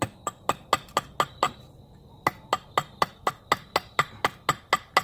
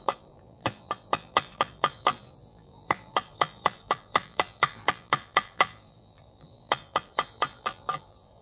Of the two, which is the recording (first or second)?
first